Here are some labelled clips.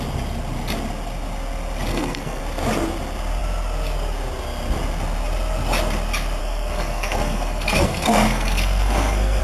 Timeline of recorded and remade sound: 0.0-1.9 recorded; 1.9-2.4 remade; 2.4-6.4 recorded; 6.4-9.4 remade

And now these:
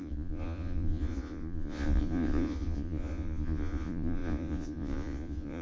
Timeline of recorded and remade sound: 0.0-5.6 remade

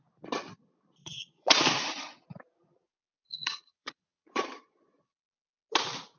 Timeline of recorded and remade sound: 0.0-1.0 recorded; 1.0-1.6 remade; 1.6-3.3 recorded; 3.3-5.2 remade; 5.2-6.2 recorded

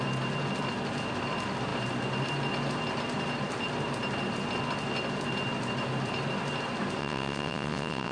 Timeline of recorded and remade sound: 0.0-7.0 recorded; 7.0-8.1 remade